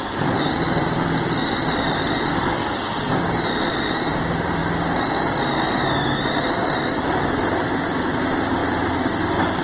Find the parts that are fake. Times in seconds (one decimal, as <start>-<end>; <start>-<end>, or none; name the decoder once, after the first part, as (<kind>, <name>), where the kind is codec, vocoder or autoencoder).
0.0-4.6 (vocoder, BigVGAN v2); 6.4-8.6